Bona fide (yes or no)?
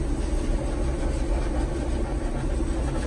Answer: yes